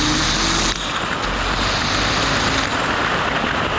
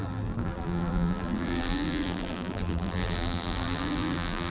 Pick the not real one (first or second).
second